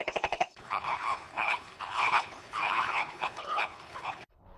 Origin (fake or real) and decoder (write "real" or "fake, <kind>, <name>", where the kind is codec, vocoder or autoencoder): fake, codec, HILCodec